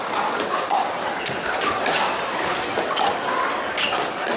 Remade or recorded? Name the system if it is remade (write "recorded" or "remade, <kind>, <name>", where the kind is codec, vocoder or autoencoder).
recorded